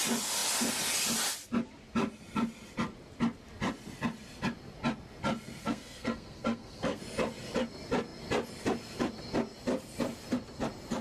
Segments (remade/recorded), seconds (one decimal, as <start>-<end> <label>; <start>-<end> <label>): 0.0-5.6 recorded; 5.6-7.0 remade; 7.0-11.0 recorded